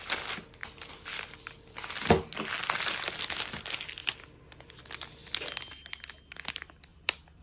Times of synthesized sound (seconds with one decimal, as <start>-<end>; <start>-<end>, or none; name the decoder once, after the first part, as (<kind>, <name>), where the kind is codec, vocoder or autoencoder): 0.6-1.1 (vocoder, BigVGAN v2); 4.0-4.8; 6.9-7.4